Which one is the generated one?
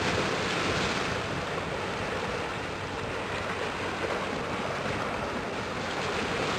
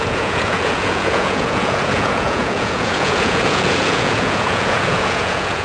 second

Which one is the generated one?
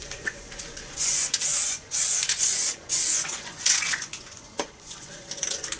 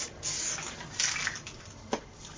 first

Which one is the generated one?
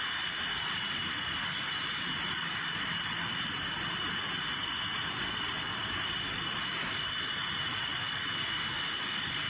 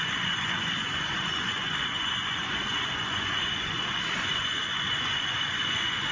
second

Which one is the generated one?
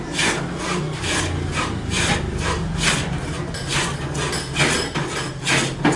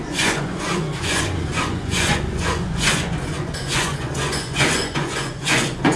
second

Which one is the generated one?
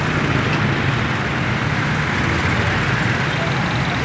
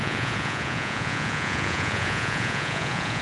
second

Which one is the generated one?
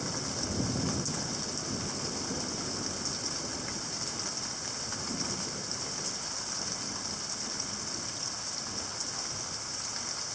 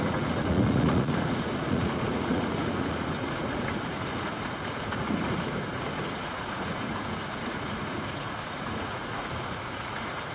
second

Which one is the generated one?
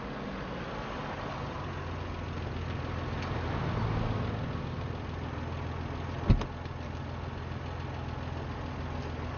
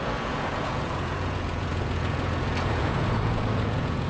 second